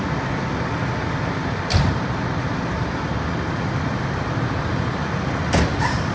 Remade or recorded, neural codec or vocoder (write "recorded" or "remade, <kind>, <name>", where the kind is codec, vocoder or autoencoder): recorded